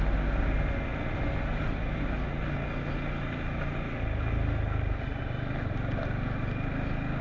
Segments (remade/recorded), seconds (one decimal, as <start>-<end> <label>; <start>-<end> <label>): 0.0-7.2 recorded